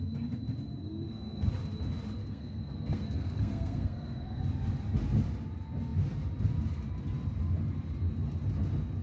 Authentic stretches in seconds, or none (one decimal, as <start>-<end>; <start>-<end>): 0.0-0.8; 1.5-2.2; 4.4-9.0